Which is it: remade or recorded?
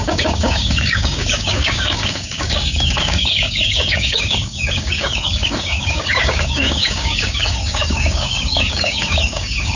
remade